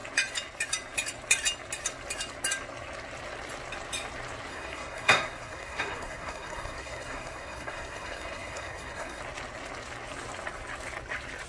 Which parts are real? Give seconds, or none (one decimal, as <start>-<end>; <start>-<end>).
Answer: 0.0-4.5; 9.2-11.5

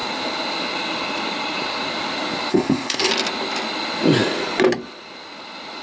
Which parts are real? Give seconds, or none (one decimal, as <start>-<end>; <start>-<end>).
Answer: 0.0-2.5; 3.1-5.8

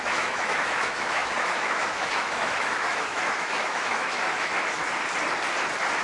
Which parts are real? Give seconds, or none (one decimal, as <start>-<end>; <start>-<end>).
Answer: 4.8-6.0

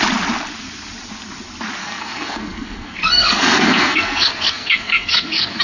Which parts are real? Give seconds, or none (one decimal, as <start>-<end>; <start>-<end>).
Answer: 0.0-1.8

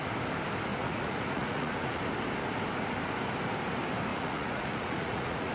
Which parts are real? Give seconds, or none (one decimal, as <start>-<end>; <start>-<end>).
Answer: 0.0-0.7; 2.0-4.1

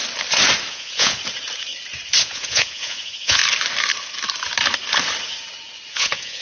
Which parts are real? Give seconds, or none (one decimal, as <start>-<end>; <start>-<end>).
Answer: 0.0-0.7; 1.2-2.2; 3.4-5.9